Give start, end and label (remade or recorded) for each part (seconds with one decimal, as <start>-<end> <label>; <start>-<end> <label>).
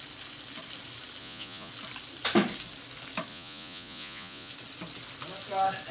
0.0-1.2 recorded; 1.2-1.7 remade; 1.7-3.3 recorded; 3.3-4.5 remade; 4.5-5.9 recorded